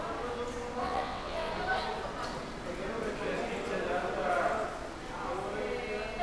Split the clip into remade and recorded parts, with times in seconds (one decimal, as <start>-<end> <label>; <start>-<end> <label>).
0.0-0.8 recorded; 0.8-1.5 remade; 1.5-6.2 recorded

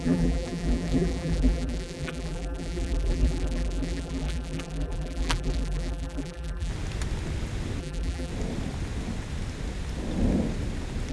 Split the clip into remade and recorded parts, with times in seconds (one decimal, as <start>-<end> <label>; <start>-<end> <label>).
0.0-6.7 remade; 6.7-7.8 recorded; 7.8-8.3 remade; 8.3-11.1 recorded

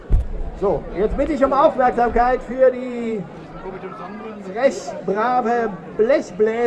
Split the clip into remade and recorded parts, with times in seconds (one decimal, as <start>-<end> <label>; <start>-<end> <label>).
0.0-1.5 recorded; 1.5-5.5 remade; 5.5-6.7 recorded

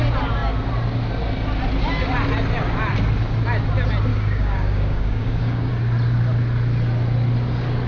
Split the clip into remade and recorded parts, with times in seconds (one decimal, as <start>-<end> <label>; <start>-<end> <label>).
0.0-4.1 recorded; 4.1-5.7 remade; 5.7-7.9 recorded

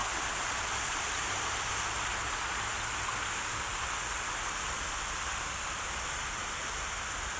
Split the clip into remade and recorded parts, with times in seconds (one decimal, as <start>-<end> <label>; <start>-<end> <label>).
0.0-7.4 recorded

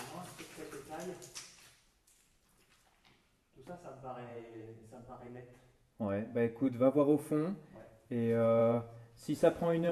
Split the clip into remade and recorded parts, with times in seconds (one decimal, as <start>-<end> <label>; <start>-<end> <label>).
0.0-4.3 recorded; 4.3-7.9 remade; 7.9-8.6 recorded; 8.6-9.9 remade

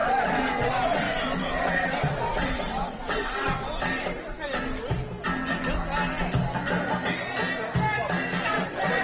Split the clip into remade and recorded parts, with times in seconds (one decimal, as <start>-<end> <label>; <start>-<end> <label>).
0.0-3.7 remade; 3.7-8.5 recorded; 8.5-9.0 remade